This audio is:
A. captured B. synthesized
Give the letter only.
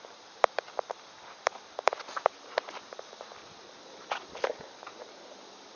A